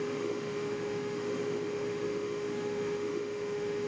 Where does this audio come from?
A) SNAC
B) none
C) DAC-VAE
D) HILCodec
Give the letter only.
C